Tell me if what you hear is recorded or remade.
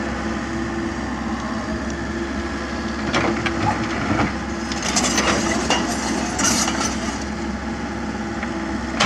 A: recorded